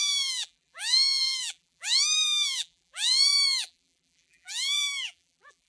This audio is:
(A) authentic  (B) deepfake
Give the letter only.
B